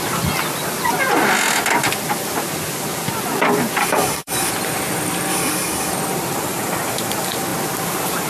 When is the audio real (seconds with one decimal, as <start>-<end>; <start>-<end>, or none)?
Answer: 0.0-3.8; 4.5-5.3; 5.9-8.3